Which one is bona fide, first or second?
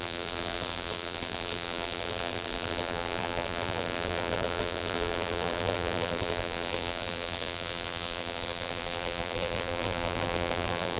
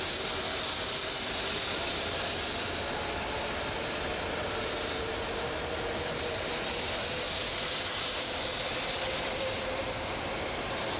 second